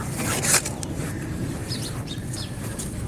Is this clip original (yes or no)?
no